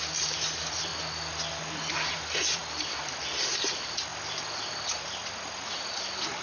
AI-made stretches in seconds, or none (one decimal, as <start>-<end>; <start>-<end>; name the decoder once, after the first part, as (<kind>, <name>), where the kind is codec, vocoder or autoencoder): 0.0-0.9 (vocoder, BigVGAN v2); 1.9-6.4